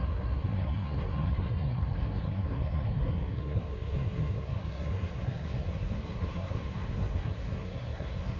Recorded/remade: remade